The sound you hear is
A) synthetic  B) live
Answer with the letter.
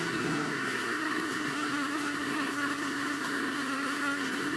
A